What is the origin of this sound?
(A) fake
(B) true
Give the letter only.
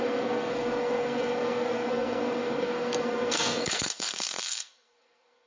A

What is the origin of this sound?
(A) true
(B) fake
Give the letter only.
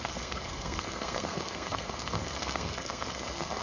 B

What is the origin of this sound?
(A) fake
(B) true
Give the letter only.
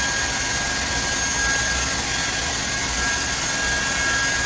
B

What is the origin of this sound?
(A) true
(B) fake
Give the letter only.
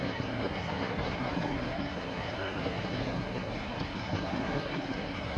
B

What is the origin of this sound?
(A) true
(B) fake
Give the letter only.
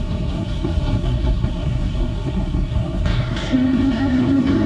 B